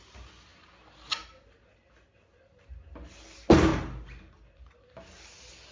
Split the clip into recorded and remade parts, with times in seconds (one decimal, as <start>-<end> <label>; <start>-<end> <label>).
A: 0.0-5.7 recorded